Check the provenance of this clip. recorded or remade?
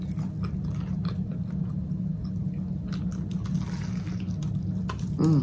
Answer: recorded